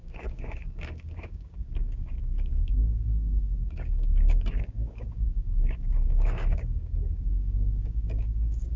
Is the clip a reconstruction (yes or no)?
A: yes